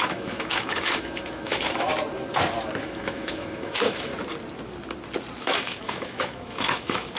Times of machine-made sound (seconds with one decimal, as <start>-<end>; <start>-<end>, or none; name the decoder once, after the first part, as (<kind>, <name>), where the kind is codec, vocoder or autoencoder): 0.0-1.9 (autoencoder, DAC-VAE); 2.8-4.1; 5.4-7.2